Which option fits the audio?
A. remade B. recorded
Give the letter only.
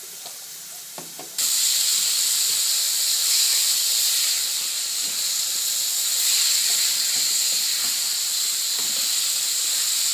B